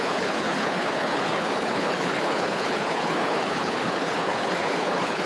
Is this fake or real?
fake